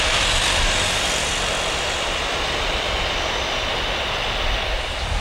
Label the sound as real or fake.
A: real